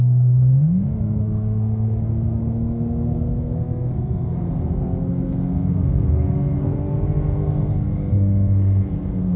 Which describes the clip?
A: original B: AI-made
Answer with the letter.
B